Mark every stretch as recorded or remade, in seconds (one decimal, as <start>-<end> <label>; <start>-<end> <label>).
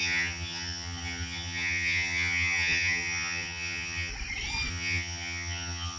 0.0-4.1 remade; 4.1-4.7 recorded; 4.7-6.0 remade